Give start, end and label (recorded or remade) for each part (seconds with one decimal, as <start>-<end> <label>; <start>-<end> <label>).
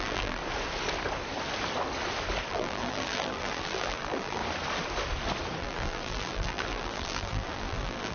0.0-0.4 remade; 0.4-2.5 recorded; 2.5-4.4 remade; 4.4-5.6 recorded; 5.6-8.1 remade